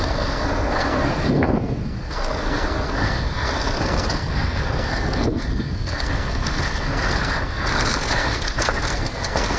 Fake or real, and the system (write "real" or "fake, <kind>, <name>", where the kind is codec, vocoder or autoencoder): fake, codec, SNAC